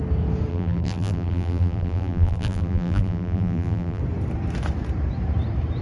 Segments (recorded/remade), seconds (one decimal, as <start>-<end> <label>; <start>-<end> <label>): 0.0-0.5 recorded; 0.5-4.0 remade; 4.0-5.8 recorded